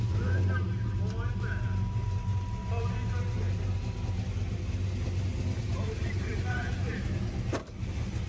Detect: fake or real real